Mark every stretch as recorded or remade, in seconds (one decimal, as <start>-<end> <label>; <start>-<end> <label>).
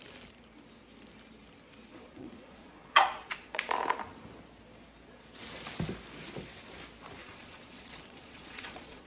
0.0-1.9 recorded; 1.9-3.7 remade; 3.7-7.2 recorded; 7.2-9.1 remade